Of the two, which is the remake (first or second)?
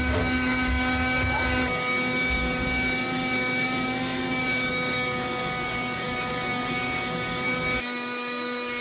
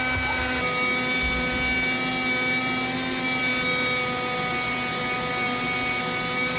first